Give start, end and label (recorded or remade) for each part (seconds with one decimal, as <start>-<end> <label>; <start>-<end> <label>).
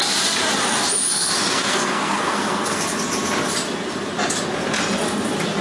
0.0-1.1 recorded; 1.1-2.8 remade; 2.8-5.6 recorded